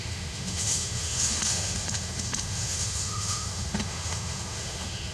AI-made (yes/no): yes